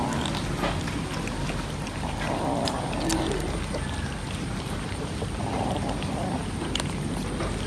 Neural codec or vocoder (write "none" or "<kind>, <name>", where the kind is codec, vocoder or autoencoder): none